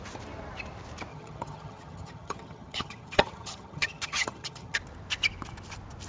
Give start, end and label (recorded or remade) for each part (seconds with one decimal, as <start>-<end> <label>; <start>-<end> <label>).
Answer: 0.0-1.1 recorded; 1.1-4.8 remade; 4.8-6.1 recorded